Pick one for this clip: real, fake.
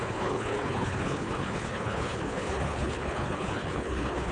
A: fake